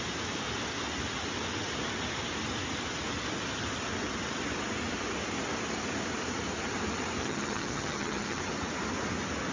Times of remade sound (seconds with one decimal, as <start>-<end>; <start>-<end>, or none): 7.2-8.4